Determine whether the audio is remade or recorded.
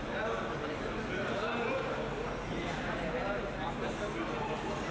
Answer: recorded